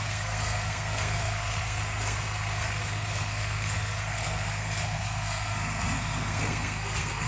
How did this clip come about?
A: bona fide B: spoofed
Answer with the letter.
B